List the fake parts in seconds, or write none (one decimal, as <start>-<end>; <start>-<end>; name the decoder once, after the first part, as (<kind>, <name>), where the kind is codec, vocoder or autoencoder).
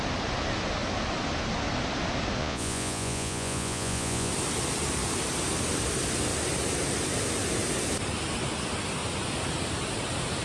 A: 2.4-4.3 (vocoder, Vocos)